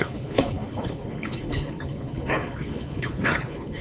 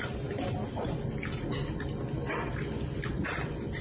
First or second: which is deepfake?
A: first